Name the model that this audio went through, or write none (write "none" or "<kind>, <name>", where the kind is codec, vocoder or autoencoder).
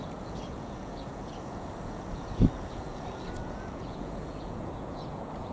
vocoder, Vocos